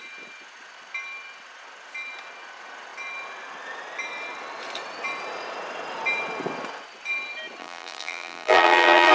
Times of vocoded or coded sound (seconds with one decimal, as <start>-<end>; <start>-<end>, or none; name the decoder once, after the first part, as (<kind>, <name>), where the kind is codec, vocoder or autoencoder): 7.6-9.1 (vocoder, BigVGAN v2)